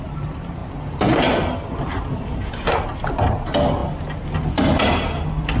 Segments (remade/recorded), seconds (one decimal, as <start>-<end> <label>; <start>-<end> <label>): 0.0-5.6 recorded